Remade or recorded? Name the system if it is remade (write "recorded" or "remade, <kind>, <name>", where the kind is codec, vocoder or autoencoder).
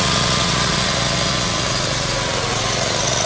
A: remade, vocoder, Vocos